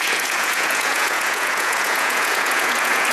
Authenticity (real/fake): fake